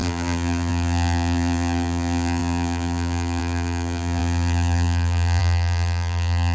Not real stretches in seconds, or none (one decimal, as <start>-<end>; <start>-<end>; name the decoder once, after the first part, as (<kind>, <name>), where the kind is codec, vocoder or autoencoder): 0.0-6.5 (vocoder, BigVGAN v2)